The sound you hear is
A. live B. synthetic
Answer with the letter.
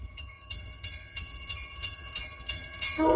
B